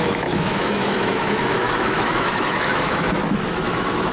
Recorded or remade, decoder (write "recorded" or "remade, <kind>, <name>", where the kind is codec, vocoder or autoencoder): remade, autoencoder, DAC-VAE